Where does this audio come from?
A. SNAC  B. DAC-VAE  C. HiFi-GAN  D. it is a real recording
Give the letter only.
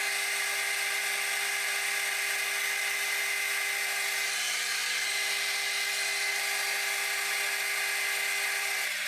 D